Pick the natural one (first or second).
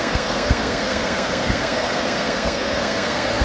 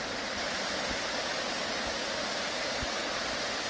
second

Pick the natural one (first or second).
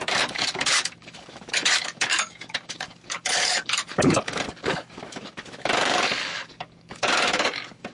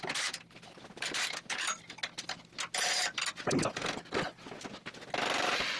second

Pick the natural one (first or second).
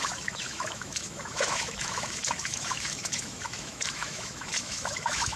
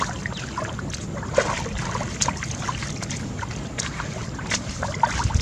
second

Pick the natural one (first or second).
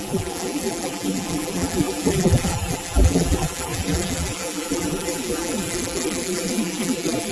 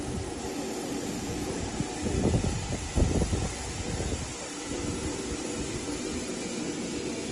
second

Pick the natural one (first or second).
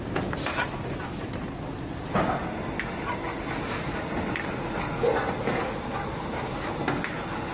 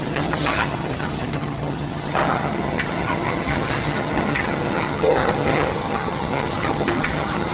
first